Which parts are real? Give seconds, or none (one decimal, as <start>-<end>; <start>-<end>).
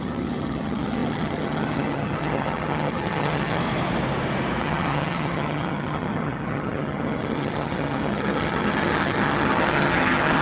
3.6-4.6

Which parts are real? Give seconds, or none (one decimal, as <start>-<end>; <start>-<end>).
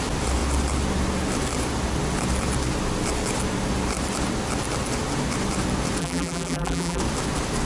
0.0-6.0; 7.0-7.7